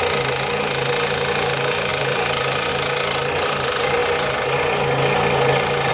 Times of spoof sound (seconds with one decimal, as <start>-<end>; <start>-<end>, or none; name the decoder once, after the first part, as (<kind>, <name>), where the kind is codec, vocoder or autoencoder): 1.9-2.7 (vocoder, BigVGAN v2)